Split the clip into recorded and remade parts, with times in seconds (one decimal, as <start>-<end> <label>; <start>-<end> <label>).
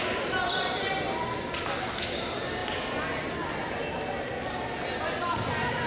0.0-2.6 recorded; 2.6-3.5 remade; 3.5-5.9 recorded